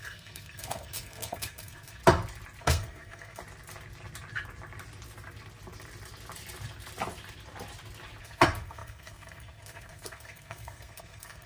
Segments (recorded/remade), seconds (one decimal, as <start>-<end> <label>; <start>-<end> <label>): 0.0-2.0 remade; 2.0-2.6 recorded; 2.6-3.4 remade; 3.4-8.2 recorded; 8.2-11.5 remade